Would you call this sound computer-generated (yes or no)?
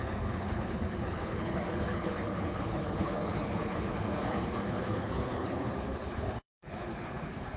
yes